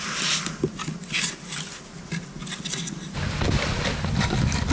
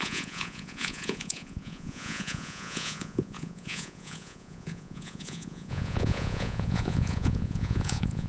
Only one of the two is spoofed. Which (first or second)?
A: second